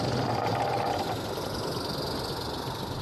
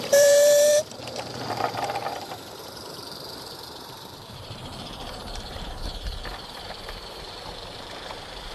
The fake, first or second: second